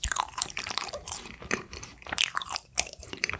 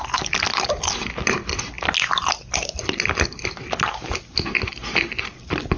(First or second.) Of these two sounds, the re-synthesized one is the first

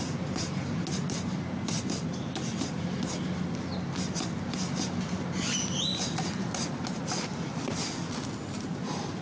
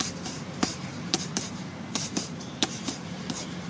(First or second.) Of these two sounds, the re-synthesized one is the second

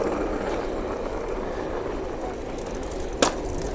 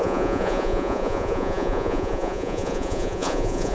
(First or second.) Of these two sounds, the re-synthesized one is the second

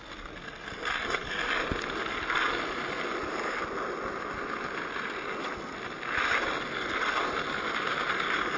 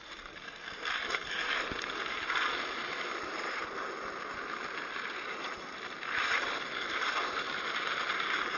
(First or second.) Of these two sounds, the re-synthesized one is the second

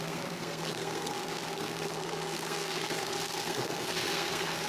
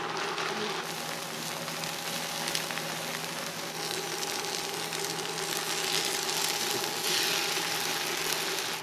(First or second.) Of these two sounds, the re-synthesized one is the first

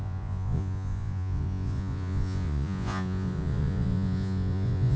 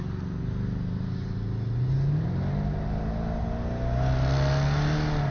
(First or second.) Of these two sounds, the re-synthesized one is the first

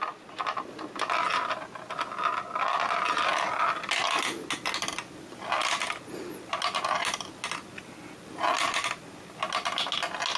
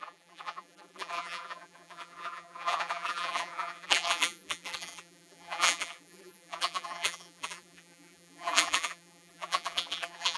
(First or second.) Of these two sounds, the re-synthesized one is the second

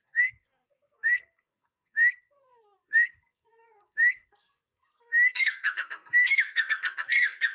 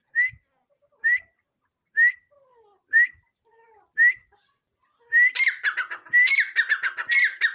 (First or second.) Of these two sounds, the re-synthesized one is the first